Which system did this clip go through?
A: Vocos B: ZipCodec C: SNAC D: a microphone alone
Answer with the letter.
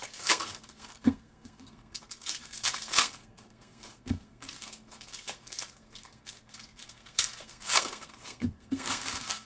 C